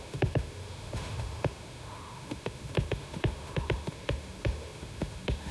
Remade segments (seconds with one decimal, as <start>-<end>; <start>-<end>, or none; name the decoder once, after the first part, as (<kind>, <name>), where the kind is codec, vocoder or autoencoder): 0.0-5.5 (autoencoder, DAC-VAE)